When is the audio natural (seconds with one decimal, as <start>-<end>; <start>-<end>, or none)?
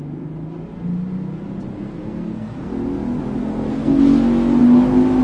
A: 0.0-1.7; 2.7-3.4; 4.0-5.2